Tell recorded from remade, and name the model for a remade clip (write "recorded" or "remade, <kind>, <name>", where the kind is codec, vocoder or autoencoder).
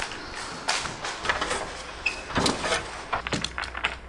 recorded